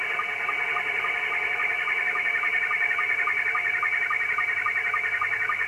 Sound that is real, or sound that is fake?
real